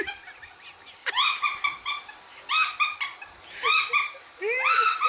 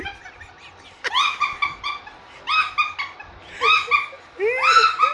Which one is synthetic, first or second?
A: first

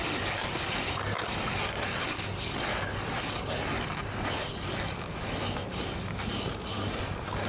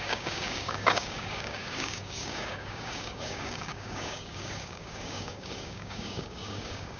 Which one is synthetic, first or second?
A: second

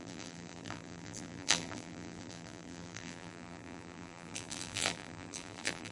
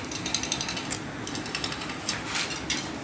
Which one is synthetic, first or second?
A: first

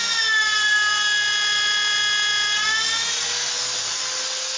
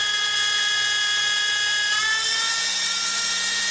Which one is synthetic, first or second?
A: second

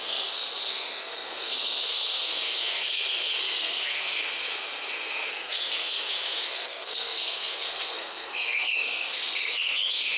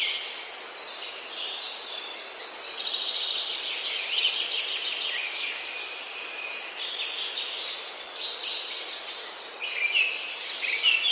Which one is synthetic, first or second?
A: first